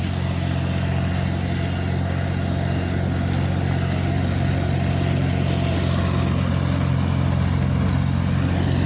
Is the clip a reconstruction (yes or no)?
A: no